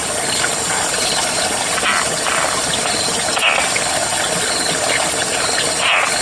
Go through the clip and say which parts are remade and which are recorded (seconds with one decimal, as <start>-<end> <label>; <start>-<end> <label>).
0.0-6.2 recorded